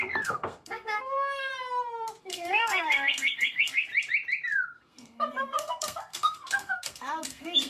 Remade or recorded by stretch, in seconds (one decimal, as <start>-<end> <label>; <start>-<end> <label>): 0.0-1.5 remade; 1.5-2.2 recorded; 2.2-3.9 remade; 3.9-4.8 recorded; 4.8-7.7 remade